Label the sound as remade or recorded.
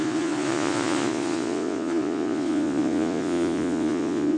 remade